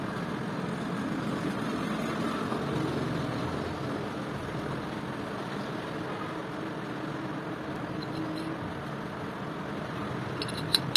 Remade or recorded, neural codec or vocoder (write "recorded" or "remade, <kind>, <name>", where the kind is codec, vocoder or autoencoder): recorded